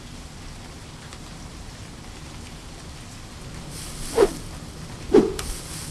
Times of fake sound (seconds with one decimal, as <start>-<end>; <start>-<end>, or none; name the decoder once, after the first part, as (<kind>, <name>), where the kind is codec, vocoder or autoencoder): 0.8-2.2 (vocoder, BigVGAN v2)